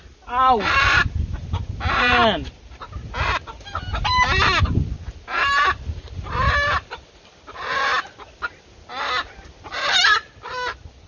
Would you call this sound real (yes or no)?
yes